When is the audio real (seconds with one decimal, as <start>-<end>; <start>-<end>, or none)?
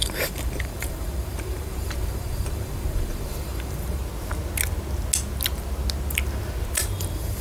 4.0-6.8